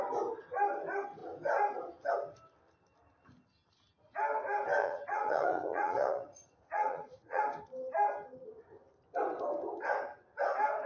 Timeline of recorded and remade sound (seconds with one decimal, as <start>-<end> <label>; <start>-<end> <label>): 0.0-4.8 recorded; 4.8-7.4 remade; 7.4-10.9 recorded